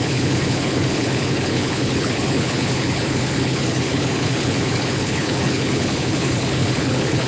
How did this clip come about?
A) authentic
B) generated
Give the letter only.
B